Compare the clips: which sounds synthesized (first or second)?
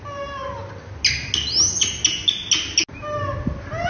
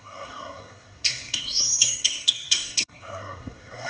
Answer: second